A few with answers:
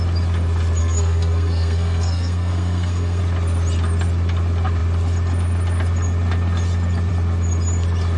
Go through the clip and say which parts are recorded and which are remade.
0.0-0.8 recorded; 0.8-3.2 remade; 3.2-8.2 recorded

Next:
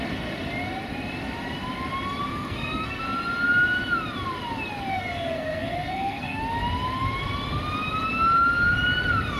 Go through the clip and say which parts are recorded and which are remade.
0.0-2.3 recorded; 2.3-3.0 remade; 3.0-4.9 recorded; 4.9-6.4 remade; 6.4-9.4 recorded

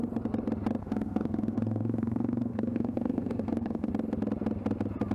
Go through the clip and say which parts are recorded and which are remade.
0.0-0.8 recorded; 0.8-3.9 remade; 3.9-5.1 recorded